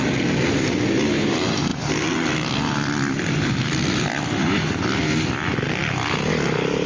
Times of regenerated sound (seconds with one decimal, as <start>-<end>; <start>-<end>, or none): none